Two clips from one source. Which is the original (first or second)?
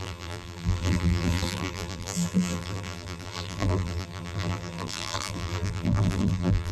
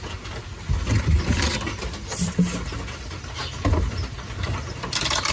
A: second